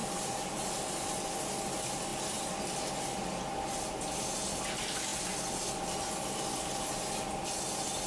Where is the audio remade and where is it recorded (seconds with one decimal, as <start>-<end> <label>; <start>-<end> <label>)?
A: 0.0-1.1 remade; 1.1-8.1 recorded